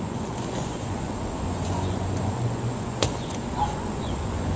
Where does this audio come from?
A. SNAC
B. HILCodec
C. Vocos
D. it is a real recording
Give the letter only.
C